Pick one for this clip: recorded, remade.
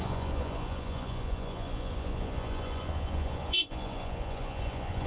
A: remade